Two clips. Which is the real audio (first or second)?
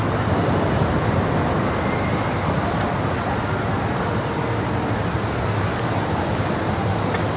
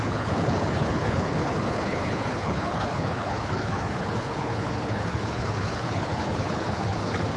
first